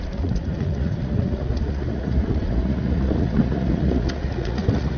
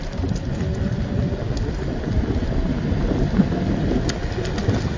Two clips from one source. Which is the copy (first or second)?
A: first